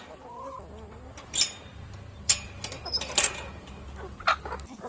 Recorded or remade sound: recorded